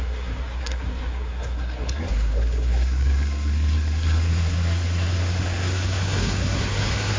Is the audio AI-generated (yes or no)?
yes